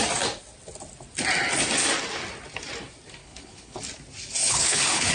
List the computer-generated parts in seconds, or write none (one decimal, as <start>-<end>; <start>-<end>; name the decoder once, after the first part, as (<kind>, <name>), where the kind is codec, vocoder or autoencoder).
3.2-3.8 (codec, HILCodec); 4.4-5.1